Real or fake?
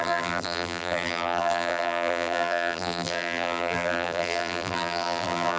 fake